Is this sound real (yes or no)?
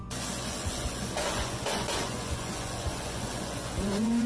no